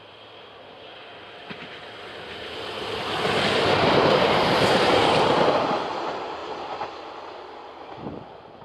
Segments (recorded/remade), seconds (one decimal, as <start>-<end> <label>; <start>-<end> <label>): 0.0-0.9 remade; 0.9-4.1 recorded; 4.1-6.4 remade; 6.4-8.6 recorded